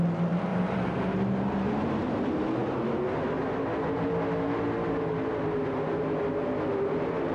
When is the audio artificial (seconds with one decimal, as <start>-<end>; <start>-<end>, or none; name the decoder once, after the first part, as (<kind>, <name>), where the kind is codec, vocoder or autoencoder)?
0.5-1.7 (vocoder, BigVGAN v2)